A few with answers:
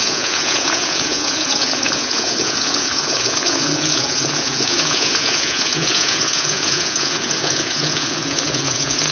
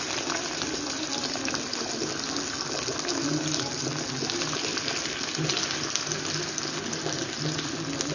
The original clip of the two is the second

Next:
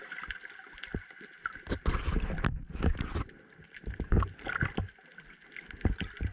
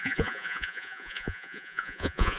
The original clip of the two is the first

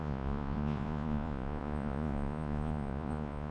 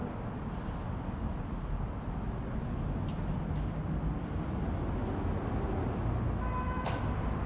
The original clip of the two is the second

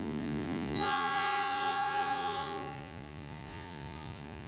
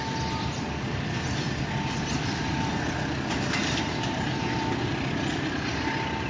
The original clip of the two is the second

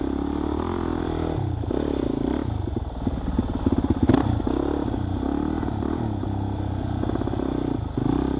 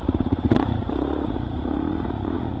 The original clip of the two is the first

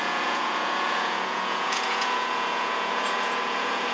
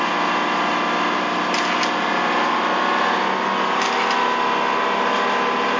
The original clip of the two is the second